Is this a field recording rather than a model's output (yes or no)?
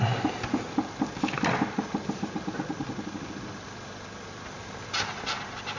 yes